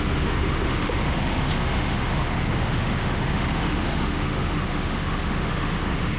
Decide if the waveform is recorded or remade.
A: remade